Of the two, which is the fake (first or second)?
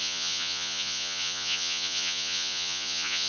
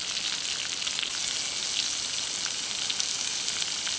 first